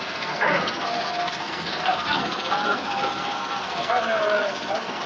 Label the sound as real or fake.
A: fake